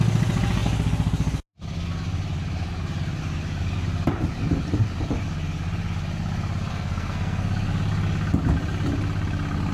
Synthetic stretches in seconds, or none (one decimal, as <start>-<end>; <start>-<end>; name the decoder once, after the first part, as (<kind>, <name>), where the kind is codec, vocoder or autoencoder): 6.7-7.8 (codec, SNAC)